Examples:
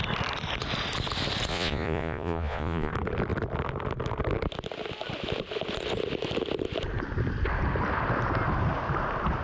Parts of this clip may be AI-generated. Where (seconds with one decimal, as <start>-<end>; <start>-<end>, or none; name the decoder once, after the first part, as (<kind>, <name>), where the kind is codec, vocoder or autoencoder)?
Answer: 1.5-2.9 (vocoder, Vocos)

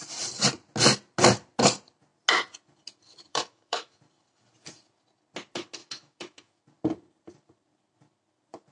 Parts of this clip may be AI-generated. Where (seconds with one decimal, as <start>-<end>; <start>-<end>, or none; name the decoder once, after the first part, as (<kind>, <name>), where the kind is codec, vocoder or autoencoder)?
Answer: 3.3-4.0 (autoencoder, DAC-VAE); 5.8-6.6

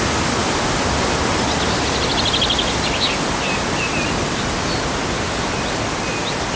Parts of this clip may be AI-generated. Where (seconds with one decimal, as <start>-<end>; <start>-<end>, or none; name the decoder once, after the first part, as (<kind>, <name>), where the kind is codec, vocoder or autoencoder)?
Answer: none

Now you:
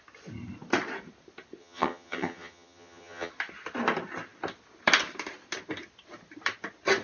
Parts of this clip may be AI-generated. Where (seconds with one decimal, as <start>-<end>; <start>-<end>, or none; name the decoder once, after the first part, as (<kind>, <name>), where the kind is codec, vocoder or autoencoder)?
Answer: 1.6-3.3 (vocoder, HiFi-GAN)